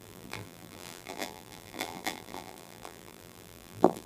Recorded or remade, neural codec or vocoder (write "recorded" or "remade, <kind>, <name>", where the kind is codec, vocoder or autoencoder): remade, vocoder, BigVGAN v2